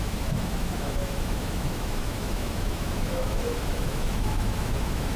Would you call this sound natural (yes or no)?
no